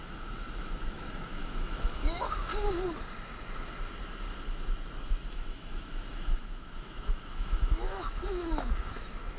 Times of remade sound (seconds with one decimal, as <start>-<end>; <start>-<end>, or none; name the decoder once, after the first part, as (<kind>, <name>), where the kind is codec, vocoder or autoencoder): 0.6-2.5 (autoencoder, DAC-VAE); 5.3-9.4